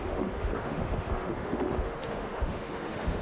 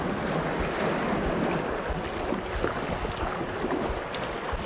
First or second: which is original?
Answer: second